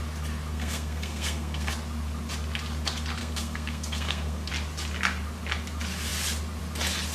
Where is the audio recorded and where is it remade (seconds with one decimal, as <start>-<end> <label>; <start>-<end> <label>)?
0.0-0.5 recorded; 0.5-1.7 remade; 1.7-3.2 recorded; 3.2-4.5 remade; 4.5-7.1 recorded